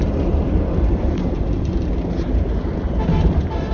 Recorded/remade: remade